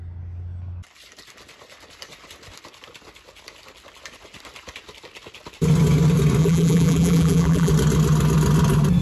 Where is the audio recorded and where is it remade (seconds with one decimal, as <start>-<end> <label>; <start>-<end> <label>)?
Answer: 0.0-6.4 recorded; 6.4-7.7 remade; 7.7-9.0 recorded